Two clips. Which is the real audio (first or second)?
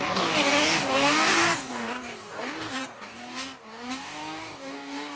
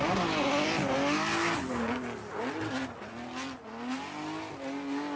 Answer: second